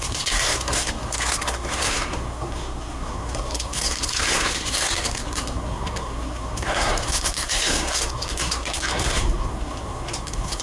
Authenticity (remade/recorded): remade